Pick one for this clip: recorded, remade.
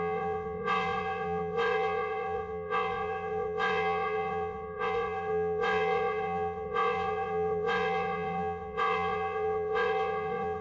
remade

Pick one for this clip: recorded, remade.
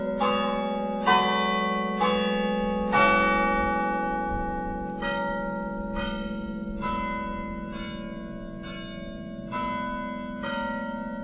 recorded